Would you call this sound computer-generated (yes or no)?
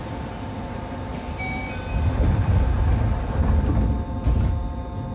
no